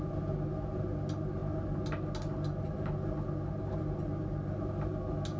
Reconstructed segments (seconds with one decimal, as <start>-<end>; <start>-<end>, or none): none